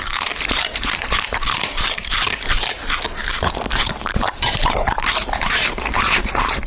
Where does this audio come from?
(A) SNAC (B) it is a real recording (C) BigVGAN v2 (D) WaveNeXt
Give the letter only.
C